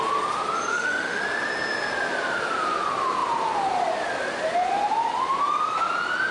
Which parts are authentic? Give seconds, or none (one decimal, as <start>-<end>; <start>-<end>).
0.0-0.7; 1.2-6.3